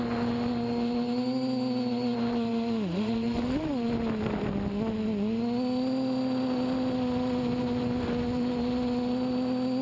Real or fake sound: real